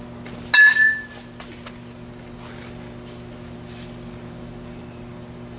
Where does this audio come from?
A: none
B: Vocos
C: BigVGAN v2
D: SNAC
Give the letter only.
A